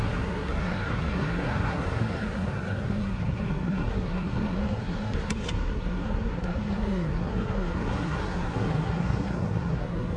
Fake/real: fake